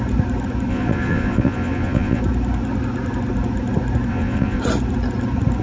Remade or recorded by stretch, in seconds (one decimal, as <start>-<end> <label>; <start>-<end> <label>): 0.0-0.7 recorded; 0.7-2.2 remade; 2.2-4.1 recorded; 4.1-4.6 remade; 4.6-5.6 recorded